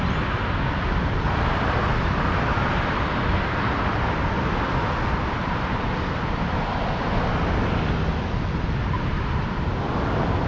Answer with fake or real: real